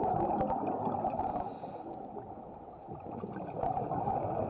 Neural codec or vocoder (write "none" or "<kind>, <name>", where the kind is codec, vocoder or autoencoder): none